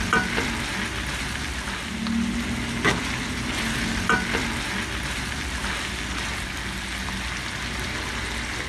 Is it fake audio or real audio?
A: real